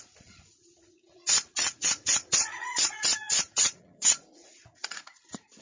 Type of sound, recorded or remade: remade